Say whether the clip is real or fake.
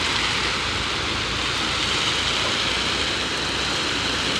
real